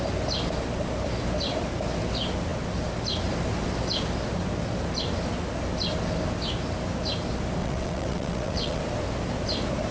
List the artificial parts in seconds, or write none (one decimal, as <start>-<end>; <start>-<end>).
7.6-8.8